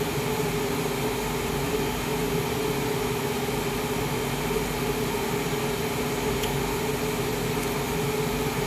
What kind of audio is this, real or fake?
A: real